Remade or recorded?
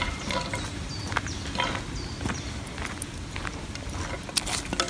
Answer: recorded